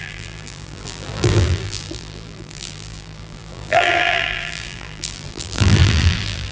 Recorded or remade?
remade